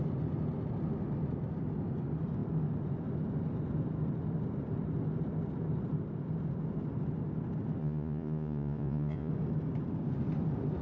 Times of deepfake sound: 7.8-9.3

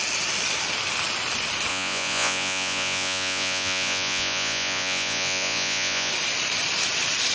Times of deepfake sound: 1.7-6.1

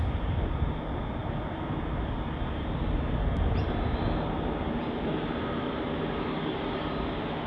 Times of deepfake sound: none

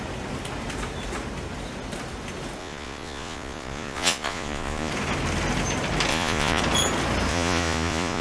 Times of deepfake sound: 2.6-4.9; 6.1-6.6; 7.3-8.2

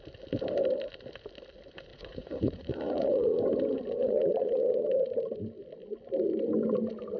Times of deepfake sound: 1.9-3.4; 4.0-5.0

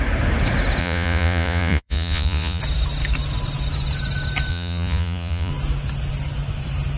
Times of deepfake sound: 0.8-2.6; 4.5-5.5

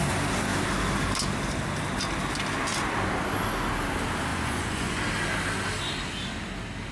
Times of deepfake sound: 4.3-5.0